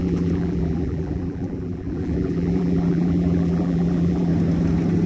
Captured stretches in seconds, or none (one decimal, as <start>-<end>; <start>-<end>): 4.3-5.1